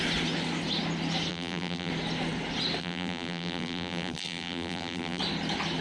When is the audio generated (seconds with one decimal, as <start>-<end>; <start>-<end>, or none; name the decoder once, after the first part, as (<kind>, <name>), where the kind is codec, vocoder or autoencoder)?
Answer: 1.3-1.9 (vocoder, BigVGAN v2); 2.8-5.2